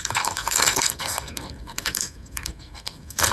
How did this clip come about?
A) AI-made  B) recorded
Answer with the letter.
A